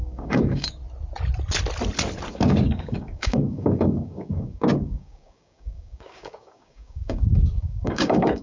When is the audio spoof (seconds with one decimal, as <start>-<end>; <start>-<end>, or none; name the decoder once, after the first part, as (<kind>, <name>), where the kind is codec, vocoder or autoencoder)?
0.0-0.8 (codec, DAC); 2.3-8.4